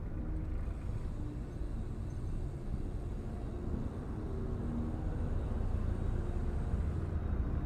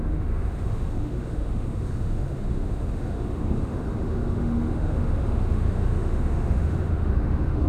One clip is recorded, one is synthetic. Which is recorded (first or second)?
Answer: first